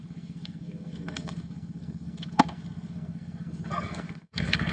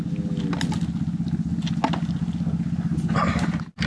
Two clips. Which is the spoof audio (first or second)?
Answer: first